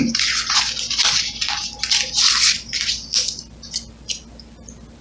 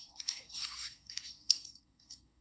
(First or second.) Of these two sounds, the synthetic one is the second